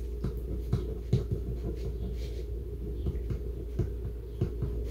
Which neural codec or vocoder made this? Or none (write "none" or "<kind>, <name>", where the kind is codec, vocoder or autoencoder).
none